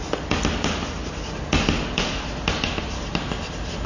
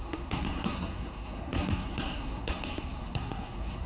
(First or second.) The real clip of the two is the first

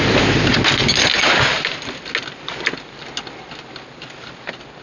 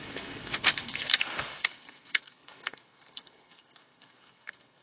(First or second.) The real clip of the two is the first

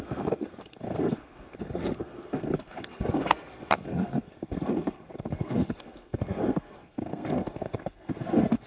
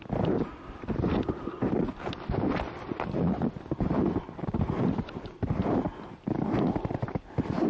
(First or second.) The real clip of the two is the second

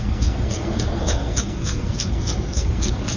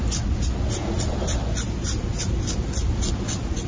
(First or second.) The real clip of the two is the second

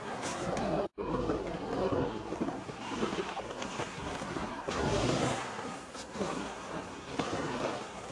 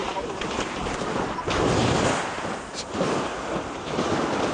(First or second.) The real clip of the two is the second